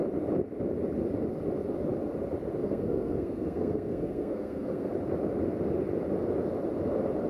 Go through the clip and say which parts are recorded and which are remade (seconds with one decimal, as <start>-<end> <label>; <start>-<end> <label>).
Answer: 0.0-2.6 recorded; 2.6-4.9 remade; 4.9-7.3 recorded